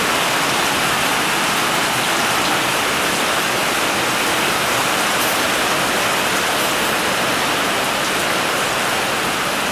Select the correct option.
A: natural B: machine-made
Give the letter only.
A